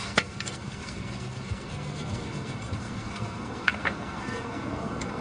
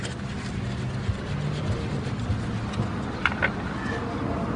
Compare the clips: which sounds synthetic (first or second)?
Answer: first